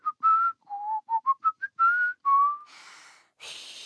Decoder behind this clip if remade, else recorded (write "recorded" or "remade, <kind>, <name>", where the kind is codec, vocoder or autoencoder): recorded